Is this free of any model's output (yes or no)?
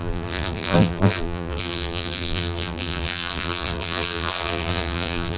no